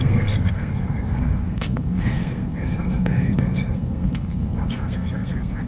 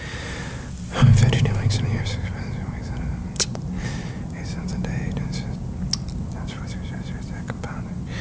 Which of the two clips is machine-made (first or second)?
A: first